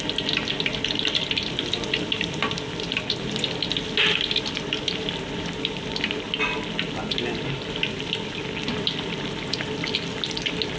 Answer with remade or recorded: recorded